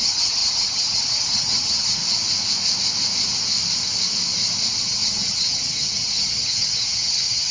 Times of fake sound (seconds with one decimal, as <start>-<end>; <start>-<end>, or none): 0.0-2.0; 4.8-7.5